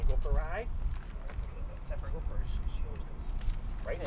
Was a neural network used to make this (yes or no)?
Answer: no